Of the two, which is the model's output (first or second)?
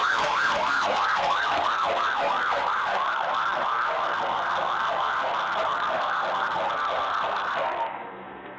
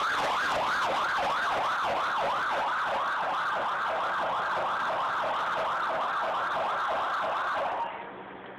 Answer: first